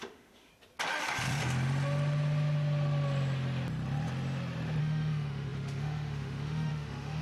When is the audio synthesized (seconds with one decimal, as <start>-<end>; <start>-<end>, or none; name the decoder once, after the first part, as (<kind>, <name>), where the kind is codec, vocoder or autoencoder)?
0.0-0.5 (autoencoder, DAC-VAE); 4.8-7.2